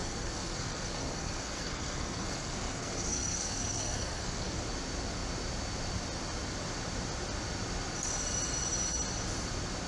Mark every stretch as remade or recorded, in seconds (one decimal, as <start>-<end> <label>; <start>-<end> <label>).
0.0-4.6 remade; 4.6-9.9 recorded